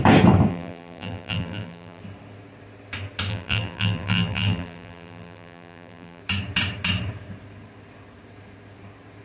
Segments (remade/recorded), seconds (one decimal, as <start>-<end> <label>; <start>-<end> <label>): 0.0-0.5 recorded; 0.5-2.0 remade; 2.0-3.3 recorded; 3.3-6.2 remade; 6.2-9.2 recorded